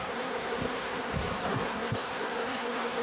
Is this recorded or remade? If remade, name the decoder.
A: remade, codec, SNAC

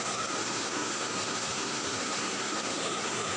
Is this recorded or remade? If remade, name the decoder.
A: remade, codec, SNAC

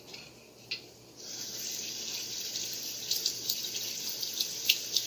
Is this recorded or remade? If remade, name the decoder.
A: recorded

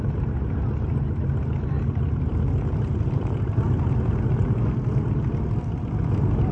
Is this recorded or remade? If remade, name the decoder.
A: recorded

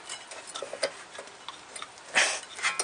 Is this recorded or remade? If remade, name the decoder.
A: recorded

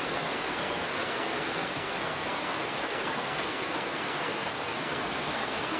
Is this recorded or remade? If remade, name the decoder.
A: remade, codec, SNAC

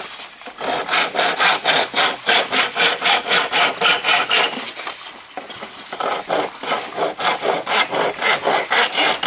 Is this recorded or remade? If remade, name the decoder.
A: recorded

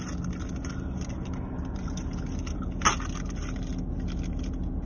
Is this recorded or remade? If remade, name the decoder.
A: recorded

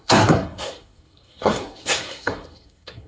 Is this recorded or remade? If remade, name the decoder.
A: remade, codec, SNAC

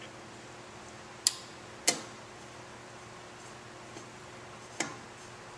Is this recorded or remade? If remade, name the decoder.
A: recorded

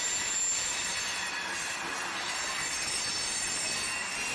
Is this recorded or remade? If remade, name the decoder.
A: recorded